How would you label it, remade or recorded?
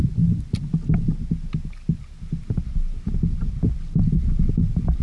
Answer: recorded